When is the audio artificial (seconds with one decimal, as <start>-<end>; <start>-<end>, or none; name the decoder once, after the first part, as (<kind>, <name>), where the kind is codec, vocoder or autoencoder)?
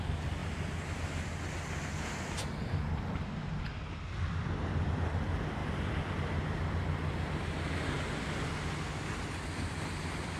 none